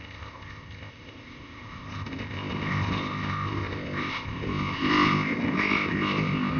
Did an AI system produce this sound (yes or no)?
yes